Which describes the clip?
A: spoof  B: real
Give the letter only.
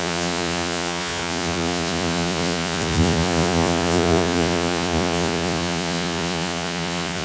A